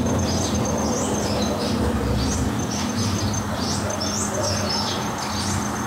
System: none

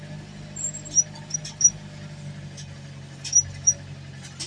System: none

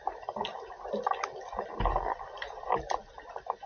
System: none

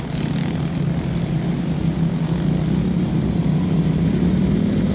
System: none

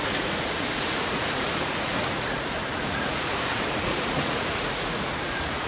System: vocoder, Vocos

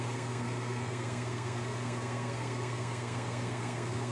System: codec, SNAC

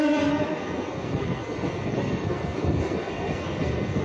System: codec, SNAC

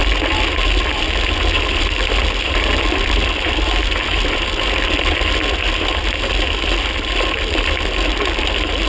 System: none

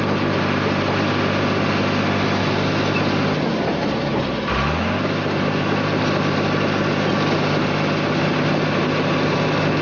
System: none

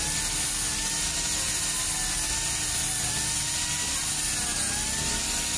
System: none